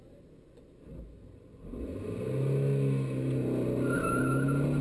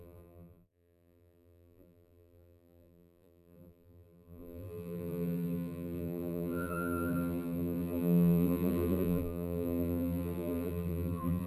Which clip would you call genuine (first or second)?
first